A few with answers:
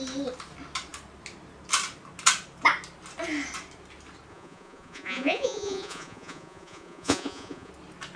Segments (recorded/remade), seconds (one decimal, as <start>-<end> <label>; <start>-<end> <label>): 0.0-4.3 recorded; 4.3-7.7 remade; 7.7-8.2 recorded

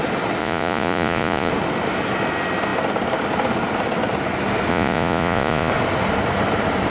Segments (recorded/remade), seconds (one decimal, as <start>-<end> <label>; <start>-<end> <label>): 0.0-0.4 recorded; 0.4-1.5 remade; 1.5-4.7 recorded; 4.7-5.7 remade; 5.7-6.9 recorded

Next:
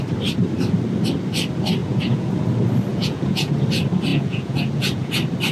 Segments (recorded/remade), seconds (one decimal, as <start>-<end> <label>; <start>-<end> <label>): 0.0-1.8 recorded; 1.8-2.3 remade; 2.3-2.9 recorded; 2.9-3.6 remade; 3.6-4.1 recorded; 4.1-5.1 remade; 5.1-5.5 recorded

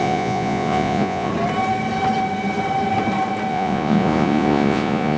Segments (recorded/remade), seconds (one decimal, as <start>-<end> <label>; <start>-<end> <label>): 0.0-1.3 remade; 1.3-3.5 recorded; 3.5-5.2 remade

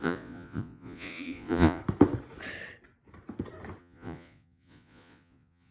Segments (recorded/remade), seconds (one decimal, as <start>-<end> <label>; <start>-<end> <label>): 0.0-1.8 remade; 1.8-3.8 recorded; 3.8-5.7 remade

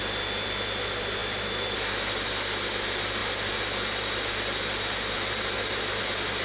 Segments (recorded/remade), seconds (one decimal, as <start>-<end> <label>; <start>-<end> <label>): 0.0-6.4 recorded

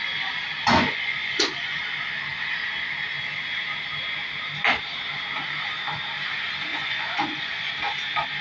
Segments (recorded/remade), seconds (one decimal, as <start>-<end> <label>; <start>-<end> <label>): 0.0-0.6 recorded; 0.6-1.8 remade; 1.8-6.7 recorded; 6.7-7.7 remade; 7.7-8.4 recorded

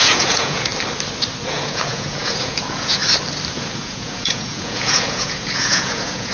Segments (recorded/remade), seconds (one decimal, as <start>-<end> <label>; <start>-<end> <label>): 0.0-0.7 remade; 0.7-1.5 recorded; 1.5-3.0 remade; 3.0-3.5 recorded; 3.5-6.3 remade